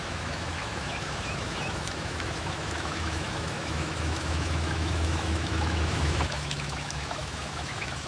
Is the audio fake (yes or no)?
yes